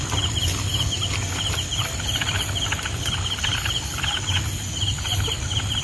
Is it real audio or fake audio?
real